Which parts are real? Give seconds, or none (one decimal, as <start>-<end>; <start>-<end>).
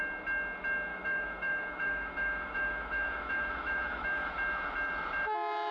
0.0-0.9; 4.3-5.7